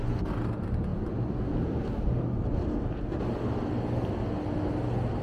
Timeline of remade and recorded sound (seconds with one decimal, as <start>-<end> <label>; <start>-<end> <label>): 0.0-5.2 recorded